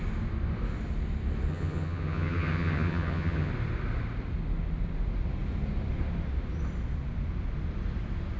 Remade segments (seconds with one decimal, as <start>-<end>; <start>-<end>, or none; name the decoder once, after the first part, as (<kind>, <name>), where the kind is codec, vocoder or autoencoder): 1.5-3.5 (vocoder, HiFi-GAN)